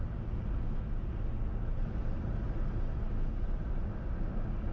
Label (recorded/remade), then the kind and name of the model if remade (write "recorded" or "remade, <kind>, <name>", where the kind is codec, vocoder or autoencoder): recorded